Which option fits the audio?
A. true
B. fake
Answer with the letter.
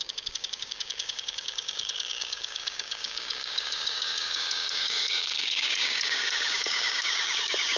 B